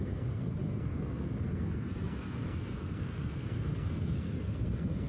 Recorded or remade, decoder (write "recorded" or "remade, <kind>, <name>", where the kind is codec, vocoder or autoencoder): remade, codec, SNAC